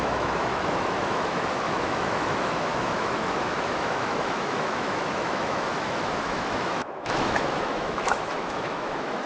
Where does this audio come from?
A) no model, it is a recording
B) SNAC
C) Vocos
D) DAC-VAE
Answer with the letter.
D